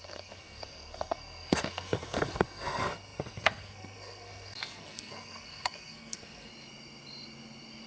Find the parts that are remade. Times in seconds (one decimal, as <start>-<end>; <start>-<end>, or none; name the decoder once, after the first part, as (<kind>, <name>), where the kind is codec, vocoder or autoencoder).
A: 0.0-6.5 (codec, SNAC)